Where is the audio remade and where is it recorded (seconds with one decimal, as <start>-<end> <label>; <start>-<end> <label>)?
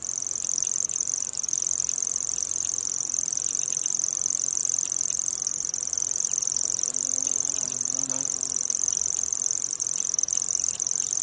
0.0-11.2 recorded